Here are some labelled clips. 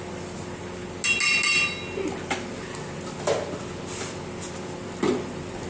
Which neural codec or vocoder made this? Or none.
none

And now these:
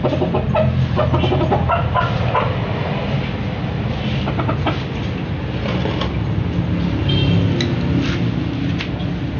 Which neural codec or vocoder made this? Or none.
none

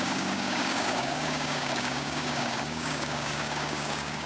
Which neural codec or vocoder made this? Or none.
codec, DAC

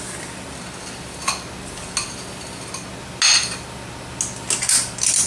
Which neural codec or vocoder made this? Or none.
none